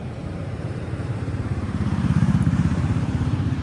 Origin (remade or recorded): remade